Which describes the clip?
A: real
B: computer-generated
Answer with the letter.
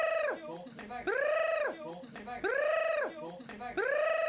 A